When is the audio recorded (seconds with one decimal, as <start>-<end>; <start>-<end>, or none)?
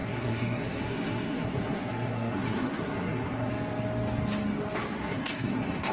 3.5-5.0